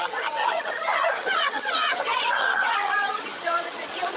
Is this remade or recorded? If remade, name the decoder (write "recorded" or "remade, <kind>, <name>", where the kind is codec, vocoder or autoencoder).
remade, vocoder, HiFi-GAN